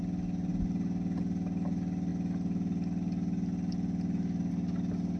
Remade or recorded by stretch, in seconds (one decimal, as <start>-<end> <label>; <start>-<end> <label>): 0.0-5.2 recorded